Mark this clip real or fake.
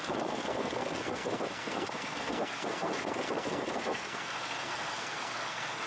fake